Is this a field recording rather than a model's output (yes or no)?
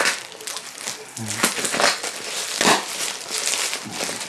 yes